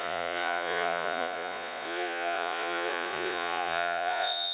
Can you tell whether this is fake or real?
fake